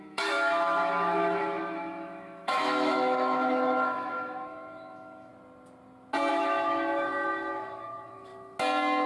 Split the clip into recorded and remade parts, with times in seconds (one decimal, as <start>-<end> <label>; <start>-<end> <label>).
0.0-5.3 remade; 5.3-6.3 recorded; 6.3-8.3 remade; 8.3-9.1 recorded